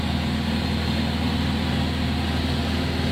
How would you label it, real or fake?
real